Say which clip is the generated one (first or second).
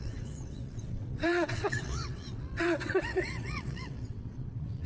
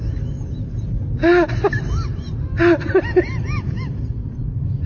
first